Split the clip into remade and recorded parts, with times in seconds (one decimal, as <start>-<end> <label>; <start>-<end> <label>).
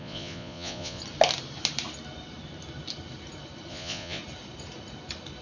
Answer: 0.0-1.0 remade; 1.0-3.7 recorded; 3.7-4.2 remade; 4.2-5.4 recorded